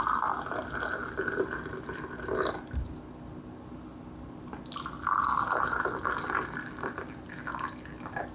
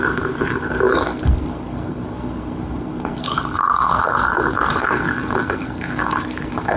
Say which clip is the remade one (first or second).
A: second